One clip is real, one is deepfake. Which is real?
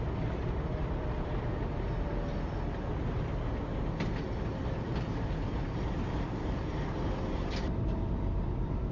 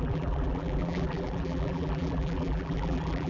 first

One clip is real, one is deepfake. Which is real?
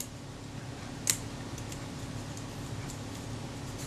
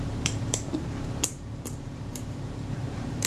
first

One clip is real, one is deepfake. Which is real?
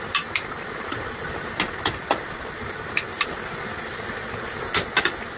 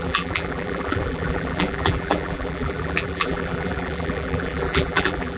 first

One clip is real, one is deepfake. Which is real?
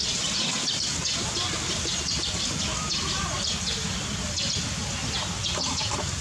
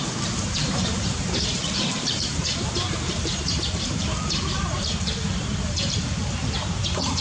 first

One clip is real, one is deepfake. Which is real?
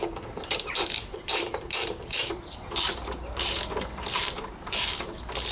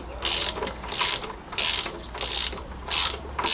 second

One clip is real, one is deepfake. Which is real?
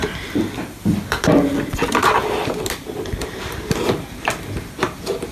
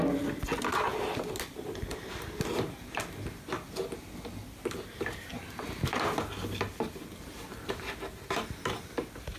second